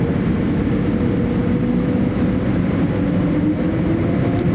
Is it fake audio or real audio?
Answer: real